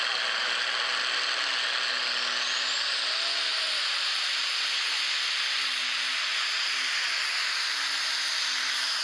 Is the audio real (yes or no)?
yes